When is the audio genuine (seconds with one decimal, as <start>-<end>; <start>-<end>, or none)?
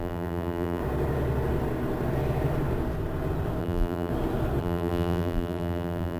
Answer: 0.8-3.6; 4.1-4.6